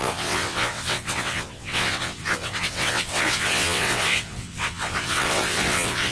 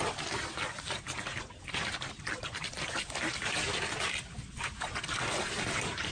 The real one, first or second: second